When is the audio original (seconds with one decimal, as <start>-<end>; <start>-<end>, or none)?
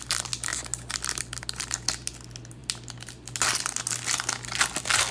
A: 0.0-5.1